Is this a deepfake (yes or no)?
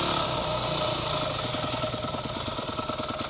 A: no